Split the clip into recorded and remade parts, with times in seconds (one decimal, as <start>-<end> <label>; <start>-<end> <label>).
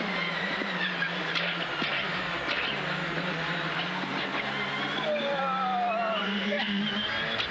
0.0-6.1 recorded; 6.1-6.8 remade; 6.8-7.5 recorded